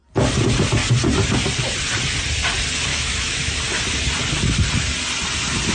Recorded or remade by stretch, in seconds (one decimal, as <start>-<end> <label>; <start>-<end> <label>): 0.0-2.9 recorded; 2.9-3.6 remade; 3.6-5.7 recorded